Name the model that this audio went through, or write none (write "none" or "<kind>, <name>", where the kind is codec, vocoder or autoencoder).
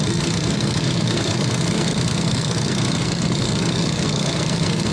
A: codec, SNAC